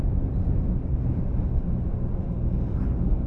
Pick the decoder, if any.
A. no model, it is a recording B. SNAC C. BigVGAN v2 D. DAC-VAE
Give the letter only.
A